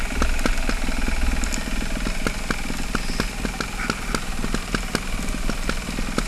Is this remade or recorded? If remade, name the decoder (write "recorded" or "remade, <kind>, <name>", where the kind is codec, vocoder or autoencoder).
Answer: recorded